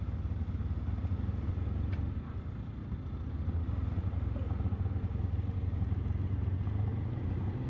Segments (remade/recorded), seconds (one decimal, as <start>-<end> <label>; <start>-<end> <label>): 0.0-7.7 recorded